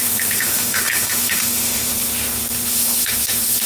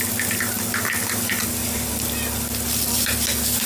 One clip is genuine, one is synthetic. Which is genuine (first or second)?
second